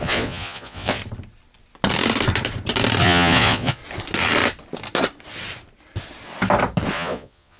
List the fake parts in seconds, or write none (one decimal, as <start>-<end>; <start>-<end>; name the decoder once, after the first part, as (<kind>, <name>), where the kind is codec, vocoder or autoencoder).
0.0-1.0 (vocoder, Vocos); 3.0-3.8; 6.9-7.6